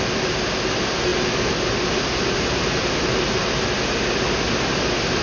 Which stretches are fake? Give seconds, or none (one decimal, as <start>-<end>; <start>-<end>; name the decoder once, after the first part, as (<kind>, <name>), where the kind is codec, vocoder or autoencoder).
none